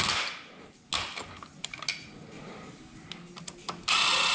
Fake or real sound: real